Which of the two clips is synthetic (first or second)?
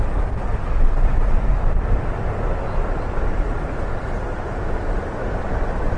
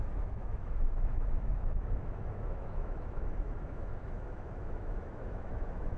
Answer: second